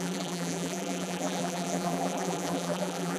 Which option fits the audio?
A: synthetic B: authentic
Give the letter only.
A